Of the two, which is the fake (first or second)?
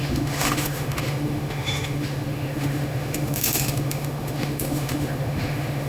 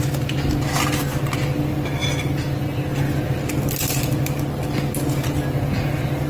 first